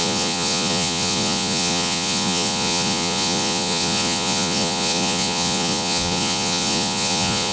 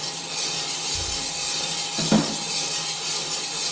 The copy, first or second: first